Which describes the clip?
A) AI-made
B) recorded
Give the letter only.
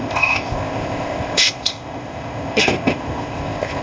A